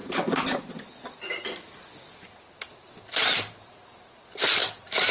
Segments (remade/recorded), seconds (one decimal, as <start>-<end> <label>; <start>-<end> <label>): 0.0-3.1 recorded; 3.1-5.1 remade